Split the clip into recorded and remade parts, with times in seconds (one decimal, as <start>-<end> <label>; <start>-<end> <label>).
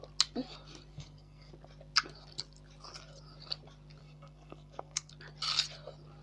0.0-0.9 recorded; 0.9-1.5 remade; 1.5-4.0 recorded; 4.0-5.1 remade; 5.1-6.2 recorded